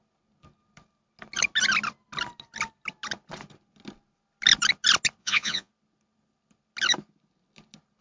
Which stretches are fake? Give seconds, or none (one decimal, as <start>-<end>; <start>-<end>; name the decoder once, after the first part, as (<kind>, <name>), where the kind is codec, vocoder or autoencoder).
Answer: 5.2-5.7 (vocoder, Vocos)